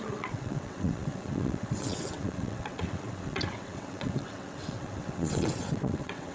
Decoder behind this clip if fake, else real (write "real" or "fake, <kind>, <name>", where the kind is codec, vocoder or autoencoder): fake, vocoder, WaveNeXt